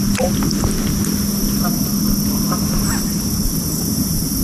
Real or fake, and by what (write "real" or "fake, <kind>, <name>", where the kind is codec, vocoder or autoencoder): real